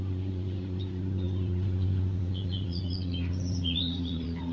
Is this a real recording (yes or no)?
no